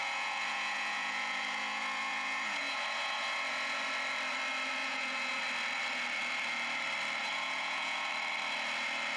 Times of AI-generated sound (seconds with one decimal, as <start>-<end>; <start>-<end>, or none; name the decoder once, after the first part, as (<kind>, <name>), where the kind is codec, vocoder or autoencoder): 0.0-3.8 (vocoder, Vocos); 4.8-5.4; 7.2-8.1

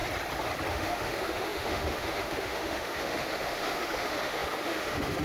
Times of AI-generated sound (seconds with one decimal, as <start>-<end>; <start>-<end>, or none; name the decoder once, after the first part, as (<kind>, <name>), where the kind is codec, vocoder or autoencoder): 0.7-5.2 (autoencoder, DAC-VAE)

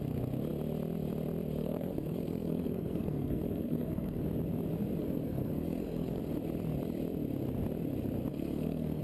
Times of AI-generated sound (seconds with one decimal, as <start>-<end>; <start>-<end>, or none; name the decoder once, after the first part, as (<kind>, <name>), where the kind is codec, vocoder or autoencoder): 1.6-4.2 (codec, SNAC); 5.0-6.2; 8.3-9.0

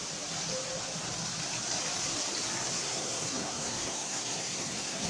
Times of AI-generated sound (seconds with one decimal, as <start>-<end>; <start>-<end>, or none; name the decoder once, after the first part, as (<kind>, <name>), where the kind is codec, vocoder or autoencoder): 2.7-5.1 (codec, SNAC)

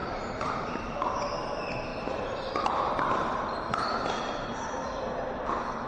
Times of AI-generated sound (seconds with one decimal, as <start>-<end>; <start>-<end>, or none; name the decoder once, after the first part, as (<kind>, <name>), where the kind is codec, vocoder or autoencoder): 0.0-0.8 (vocoder, BigVGAN v2); 1.9-5.0

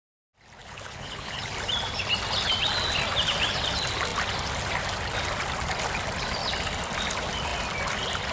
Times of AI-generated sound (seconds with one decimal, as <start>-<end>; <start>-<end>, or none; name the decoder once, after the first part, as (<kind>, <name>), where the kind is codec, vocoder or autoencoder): 0.6-1.5 (codec, HILCodec)